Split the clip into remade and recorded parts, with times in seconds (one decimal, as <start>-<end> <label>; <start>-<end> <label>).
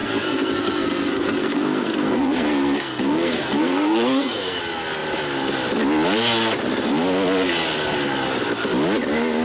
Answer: 0.0-4.6 remade; 4.6-9.4 recorded